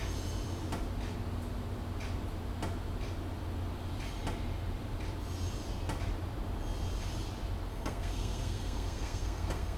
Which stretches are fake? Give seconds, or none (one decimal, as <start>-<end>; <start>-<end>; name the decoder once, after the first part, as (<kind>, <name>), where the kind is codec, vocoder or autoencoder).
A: 7.7-9.8 (codec, SNAC)

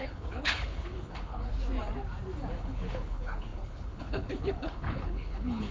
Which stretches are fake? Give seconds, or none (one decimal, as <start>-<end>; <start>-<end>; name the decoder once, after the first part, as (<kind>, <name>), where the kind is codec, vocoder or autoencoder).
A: 0.0-1.5 (codec, HILCodec); 2.5-5.7

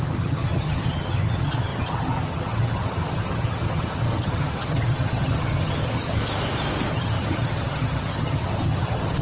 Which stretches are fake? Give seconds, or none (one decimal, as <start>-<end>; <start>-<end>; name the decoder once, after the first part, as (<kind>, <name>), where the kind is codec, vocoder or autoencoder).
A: 0.0-6.2 (vocoder, HiFi-GAN); 6.9-9.2